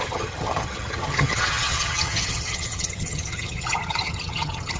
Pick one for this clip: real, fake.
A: fake